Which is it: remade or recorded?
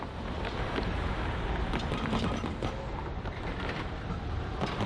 recorded